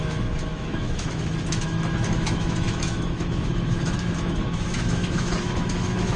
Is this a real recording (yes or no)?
no